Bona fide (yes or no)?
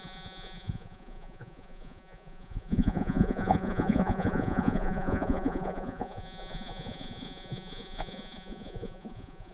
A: no